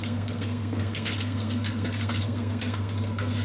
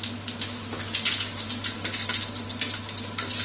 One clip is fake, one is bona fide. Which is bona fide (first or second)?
second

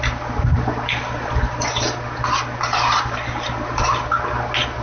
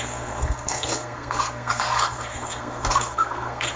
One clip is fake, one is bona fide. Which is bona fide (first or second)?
first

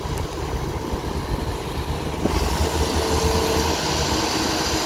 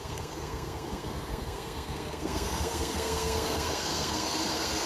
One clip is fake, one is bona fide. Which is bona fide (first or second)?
first